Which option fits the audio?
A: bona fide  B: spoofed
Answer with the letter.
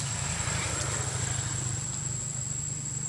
A